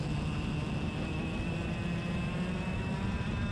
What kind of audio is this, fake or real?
real